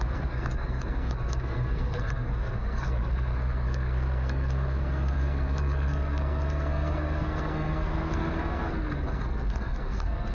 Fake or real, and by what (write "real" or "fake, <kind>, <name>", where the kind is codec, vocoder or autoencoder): fake, codec, SNAC